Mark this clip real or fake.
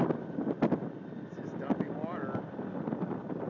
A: real